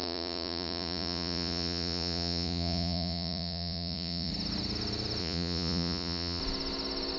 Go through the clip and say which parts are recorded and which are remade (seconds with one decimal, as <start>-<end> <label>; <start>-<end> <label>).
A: 0.0-4.3 remade; 4.3-5.2 recorded; 5.2-6.4 remade; 6.4-7.2 recorded